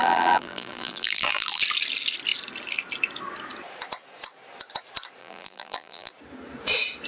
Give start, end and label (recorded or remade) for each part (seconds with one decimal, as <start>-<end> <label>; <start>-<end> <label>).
0.0-1.6 remade; 1.6-5.2 recorded; 5.2-6.1 remade; 6.1-7.1 recorded